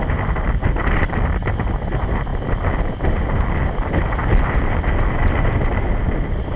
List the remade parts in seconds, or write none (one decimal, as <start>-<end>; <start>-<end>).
none